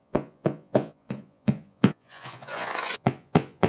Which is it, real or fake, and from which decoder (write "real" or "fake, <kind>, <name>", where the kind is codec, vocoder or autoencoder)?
fake, vocoder, Vocos